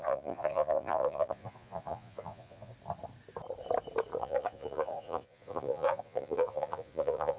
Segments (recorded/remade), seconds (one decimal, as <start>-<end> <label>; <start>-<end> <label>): 0.0-2.7 remade; 2.7-4.2 recorded; 4.2-7.4 remade